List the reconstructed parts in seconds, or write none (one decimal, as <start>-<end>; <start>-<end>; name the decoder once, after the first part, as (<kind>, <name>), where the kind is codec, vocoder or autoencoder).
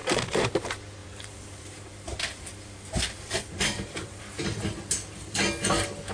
0.0-0.5 (vocoder, BigVGAN v2); 1.0-4.2